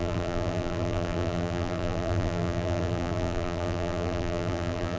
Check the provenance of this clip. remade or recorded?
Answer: remade